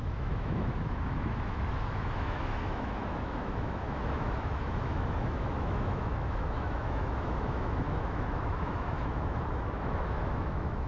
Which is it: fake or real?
fake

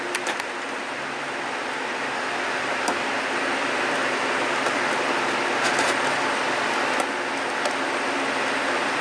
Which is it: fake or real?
real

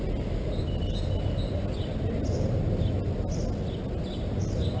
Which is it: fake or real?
real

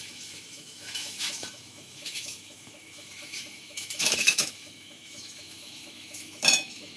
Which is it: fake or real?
fake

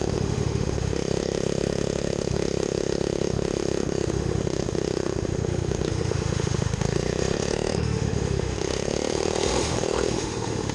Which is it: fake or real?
fake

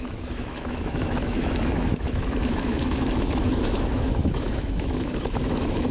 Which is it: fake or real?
fake